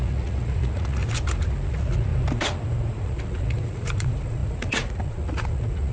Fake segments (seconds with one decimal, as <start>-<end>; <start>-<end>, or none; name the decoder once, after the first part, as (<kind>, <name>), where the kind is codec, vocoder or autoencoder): 0.0-1.0 (vocoder, Vocos); 1.7-2.1; 2.9-5.9

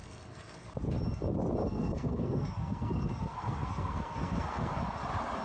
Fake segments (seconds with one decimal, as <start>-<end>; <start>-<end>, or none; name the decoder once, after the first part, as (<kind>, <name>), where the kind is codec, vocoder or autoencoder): 0.0-0.7 (codec, SNAC); 1.6-4.8

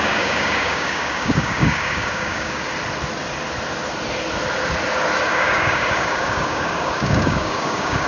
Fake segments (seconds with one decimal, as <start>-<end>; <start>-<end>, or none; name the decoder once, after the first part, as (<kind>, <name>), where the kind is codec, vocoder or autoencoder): 0.0-2.7 (codec, DAC); 5.3-8.1

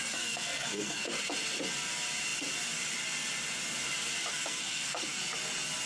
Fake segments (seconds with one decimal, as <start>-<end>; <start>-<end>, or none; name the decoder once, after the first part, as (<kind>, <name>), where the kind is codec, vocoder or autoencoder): 0.0-1.1 (codec, SNAC); 4.3-5.2

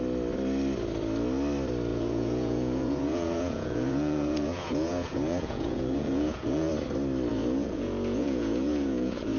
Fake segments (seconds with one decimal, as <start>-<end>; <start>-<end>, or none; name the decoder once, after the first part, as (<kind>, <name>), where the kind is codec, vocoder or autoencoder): 1.9-6.7 (vocoder, Vocos); 7.3-9.4

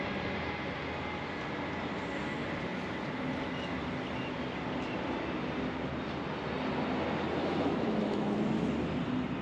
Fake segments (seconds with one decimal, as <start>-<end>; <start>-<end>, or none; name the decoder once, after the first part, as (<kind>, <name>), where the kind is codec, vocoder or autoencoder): 7.4-8.3 (autoencoder, DAC-VAE)

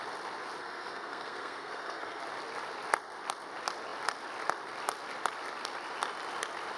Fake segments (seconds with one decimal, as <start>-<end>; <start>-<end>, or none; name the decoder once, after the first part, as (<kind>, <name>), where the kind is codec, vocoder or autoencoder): 0.6-2.2 (codec, SNAC)

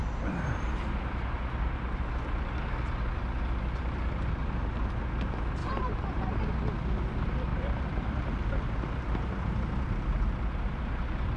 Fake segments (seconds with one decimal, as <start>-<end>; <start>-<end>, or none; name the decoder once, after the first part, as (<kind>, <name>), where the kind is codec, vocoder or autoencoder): 0.0-0.8 (vocoder, BigVGAN v2); 4.4-5.0; 5.6-6.4; 7.5-10.5